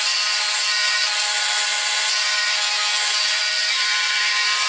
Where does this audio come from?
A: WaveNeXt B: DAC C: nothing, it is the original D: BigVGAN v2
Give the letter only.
D